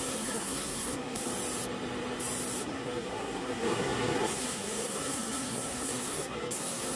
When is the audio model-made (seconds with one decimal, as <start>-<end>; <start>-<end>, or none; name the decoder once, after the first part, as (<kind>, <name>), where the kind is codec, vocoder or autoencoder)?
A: 0.0-1.3 (codec, SNAC); 2.6-7.0

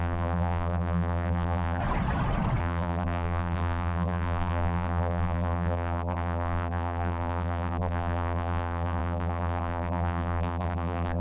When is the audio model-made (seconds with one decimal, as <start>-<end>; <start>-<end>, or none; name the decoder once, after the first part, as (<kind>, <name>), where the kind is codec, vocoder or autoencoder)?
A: 0.0-1.8 (vocoder, BigVGAN v2); 2.6-11.2

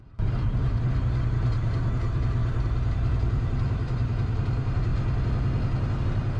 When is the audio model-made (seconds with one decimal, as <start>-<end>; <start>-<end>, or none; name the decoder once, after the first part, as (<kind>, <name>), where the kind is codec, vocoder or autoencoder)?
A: 0.0-4.9 (vocoder, BigVGAN v2); 6.0-6.4

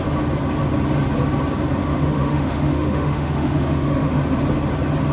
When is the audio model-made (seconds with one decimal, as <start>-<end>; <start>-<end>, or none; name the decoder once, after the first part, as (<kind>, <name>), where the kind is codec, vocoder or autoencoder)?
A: 1.8-4.2 (autoencoder, DAC-VAE)